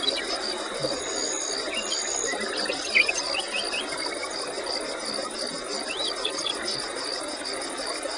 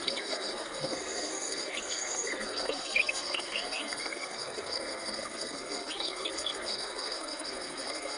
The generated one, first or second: second